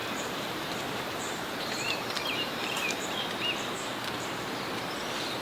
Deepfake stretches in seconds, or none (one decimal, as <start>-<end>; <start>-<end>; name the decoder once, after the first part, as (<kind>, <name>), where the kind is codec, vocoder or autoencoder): 0.0-3.2 (vocoder, BigVGAN v2)